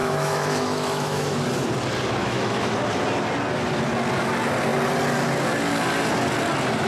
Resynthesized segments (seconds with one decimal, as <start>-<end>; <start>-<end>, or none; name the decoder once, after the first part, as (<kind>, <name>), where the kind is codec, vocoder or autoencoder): 0.0-1.4 (autoencoder, DAC-VAE); 2.2-2.7